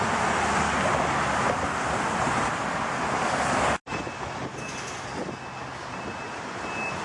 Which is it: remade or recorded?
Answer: recorded